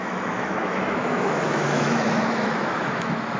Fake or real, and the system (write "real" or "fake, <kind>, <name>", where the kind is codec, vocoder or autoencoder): fake, autoencoder, DAC-VAE